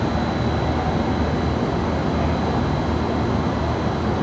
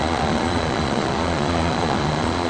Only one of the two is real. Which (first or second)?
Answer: first